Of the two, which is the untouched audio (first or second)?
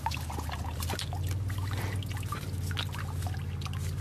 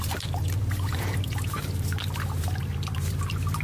first